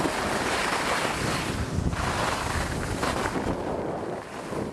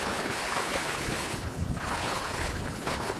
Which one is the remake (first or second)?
second